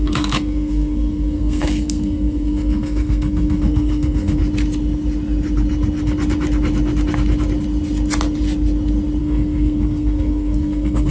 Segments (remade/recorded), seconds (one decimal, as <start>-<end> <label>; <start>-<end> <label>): 0.0-4.4 remade; 4.4-9.2 recorded; 9.2-11.1 remade